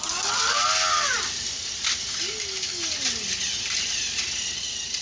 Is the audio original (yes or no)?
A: yes